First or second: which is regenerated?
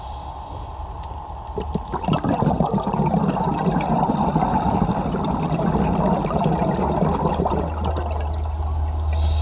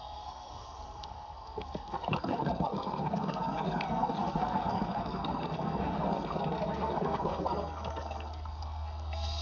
second